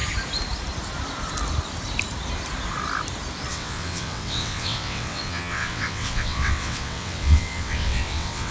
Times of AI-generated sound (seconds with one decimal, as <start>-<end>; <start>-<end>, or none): 3.5-8.5